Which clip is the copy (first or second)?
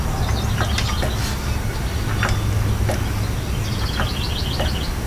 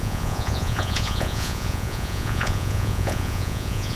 second